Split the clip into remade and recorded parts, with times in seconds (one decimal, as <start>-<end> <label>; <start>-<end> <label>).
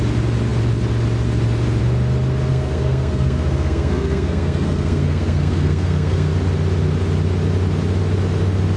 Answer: 0.0-2.5 recorded; 2.5-6.3 remade; 6.3-8.8 recorded